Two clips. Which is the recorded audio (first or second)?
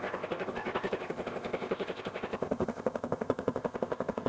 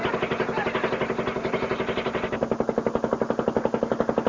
second